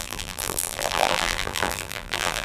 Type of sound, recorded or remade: remade